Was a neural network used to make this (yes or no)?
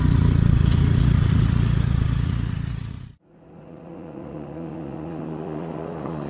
yes